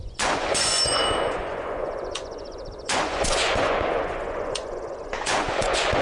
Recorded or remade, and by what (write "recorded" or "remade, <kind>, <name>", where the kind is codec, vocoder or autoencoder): remade, vocoder, Vocos